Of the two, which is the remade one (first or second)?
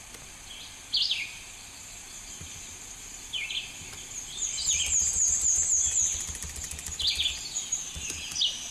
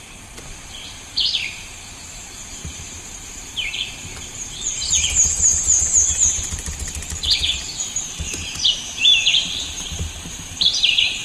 second